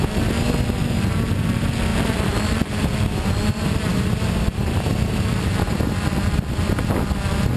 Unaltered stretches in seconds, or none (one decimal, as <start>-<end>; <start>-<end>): 0.0-1.9; 3.2-3.9; 6.6-7.6